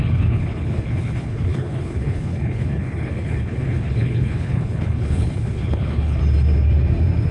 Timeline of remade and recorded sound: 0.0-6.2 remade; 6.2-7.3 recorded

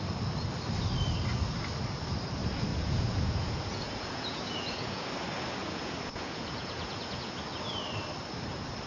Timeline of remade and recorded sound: 0.0-2.7 recorded; 2.7-5.1 remade; 5.1-5.6 recorded; 5.6-7.4 remade; 7.4-8.9 recorded

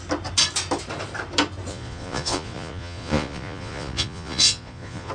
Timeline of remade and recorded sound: 0.0-1.7 recorded; 1.7-5.1 remade